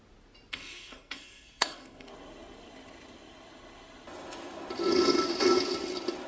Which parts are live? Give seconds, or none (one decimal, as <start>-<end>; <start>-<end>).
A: 0.0-0.5; 2.1-6.3